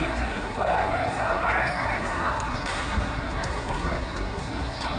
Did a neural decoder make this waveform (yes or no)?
yes